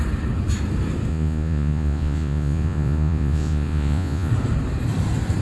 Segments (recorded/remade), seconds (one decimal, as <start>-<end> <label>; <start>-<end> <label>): 0.0-1.1 recorded; 1.1-4.3 remade; 4.3-5.4 recorded